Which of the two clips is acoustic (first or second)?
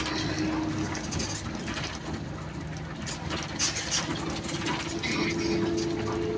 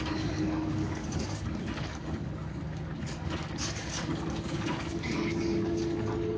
first